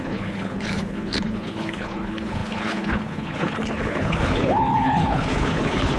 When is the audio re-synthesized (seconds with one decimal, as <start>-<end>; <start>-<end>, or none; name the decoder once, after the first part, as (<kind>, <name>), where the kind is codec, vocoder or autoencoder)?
0.0-6.0 (codec, HILCodec)